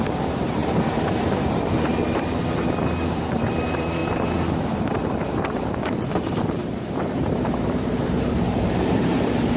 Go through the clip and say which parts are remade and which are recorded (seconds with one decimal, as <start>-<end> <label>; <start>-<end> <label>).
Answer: 0.0-4.0 remade; 4.0-4.6 recorded; 4.6-9.6 remade